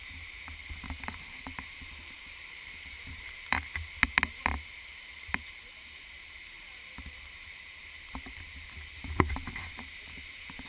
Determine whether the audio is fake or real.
fake